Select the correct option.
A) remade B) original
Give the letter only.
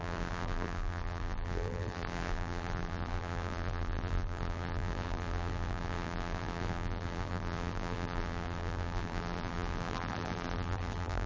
A